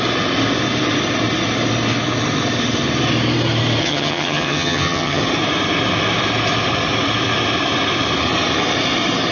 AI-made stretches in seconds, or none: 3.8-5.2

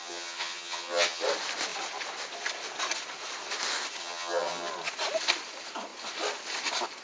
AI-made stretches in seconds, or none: 0.0-1.2; 4.0-4.7

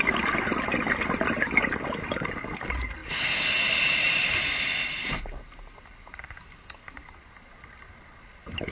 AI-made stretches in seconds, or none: none

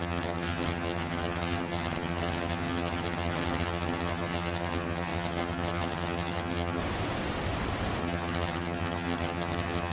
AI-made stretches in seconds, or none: 0.0-6.8; 8.0-9.9